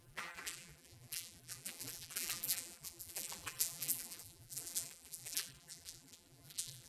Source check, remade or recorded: remade